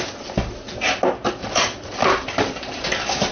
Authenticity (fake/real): real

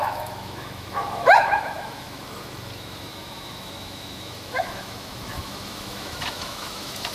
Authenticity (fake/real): fake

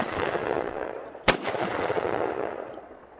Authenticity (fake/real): fake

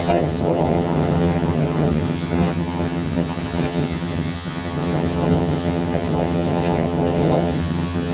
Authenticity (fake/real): fake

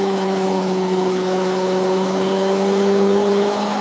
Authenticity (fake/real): fake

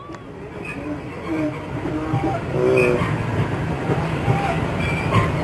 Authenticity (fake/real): real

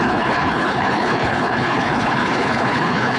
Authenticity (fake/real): fake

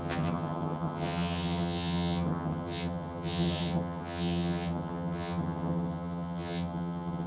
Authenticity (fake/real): fake